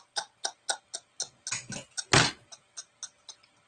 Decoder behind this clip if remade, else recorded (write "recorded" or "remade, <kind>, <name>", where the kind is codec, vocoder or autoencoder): recorded